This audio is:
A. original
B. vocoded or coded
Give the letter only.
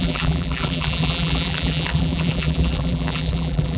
B